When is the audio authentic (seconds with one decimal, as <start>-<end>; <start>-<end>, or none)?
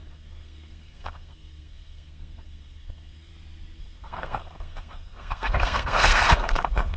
3.3-3.8